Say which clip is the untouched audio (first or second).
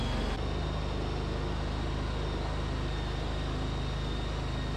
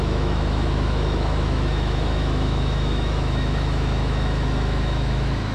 first